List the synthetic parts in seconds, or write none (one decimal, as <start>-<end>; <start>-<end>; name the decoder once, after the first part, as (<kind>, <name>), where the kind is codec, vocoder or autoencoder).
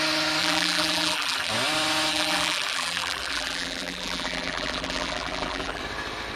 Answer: 0.4-1.5 (vocoder, BigVGAN v2); 2.1-5.8